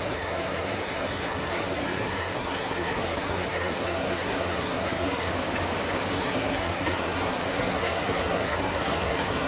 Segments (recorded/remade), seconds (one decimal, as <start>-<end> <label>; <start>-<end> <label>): 0.0-5.3 remade; 5.3-6.1 recorded; 6.1-9.5 remade